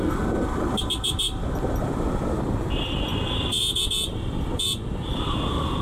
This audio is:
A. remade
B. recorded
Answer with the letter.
B